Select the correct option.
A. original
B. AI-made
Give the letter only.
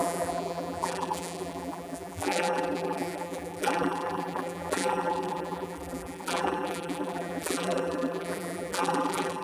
B